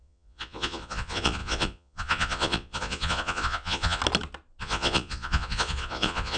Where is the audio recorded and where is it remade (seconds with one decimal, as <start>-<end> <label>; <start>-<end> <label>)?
0.0-4.0 remade; 4.0-4.6 recorded; 4.6-6.4 remade